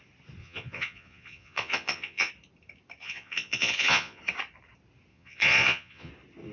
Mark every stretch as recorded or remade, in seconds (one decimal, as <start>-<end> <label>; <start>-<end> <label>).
0.0-0.4 recorded; 0.4-2.3 remade; 2.3-3.0 recorded; 3.0-4.2 remade; 4.2-5.1 recorded; 5.1-6.1 remade; 6.1-6.5 recorded